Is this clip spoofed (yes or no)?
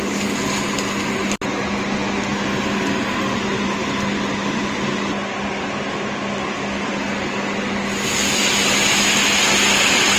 no